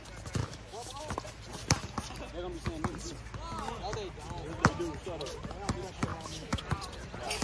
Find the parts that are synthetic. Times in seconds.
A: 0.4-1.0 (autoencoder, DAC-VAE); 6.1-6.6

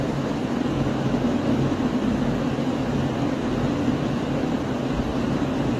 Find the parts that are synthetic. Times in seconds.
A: 0.9-1.9 (autoencoder, DAC-VAE)

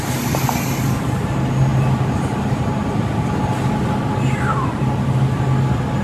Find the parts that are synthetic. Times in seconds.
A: none

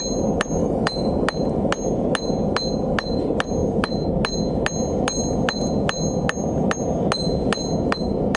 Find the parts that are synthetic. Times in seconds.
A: 0.6-1.1 (autoencoder, DAC-VAE)

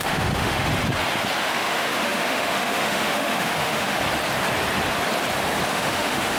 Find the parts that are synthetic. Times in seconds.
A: 0.0-0.7 (autoencoder, DAC-VAE); 1.4-4.0; 5.7-6.4

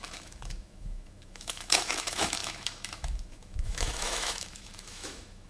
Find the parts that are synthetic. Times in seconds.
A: 0.0-5.5 (autoencoder, DAC-VAE)